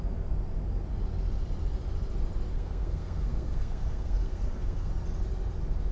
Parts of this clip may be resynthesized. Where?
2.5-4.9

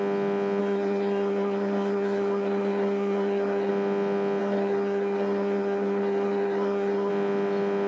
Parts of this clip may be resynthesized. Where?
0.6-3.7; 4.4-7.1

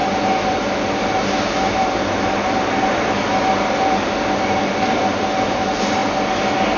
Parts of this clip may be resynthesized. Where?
0.0-4.1

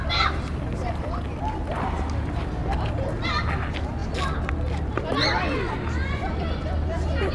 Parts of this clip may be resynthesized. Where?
none

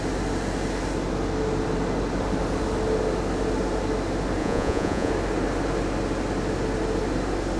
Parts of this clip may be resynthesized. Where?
4.4-5.1

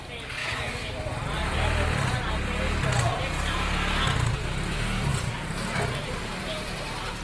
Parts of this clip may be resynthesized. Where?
0.4-0.9